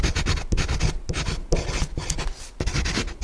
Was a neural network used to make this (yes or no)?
no